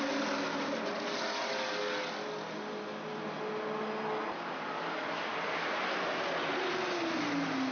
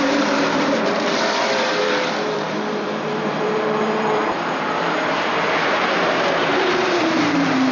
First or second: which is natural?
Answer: first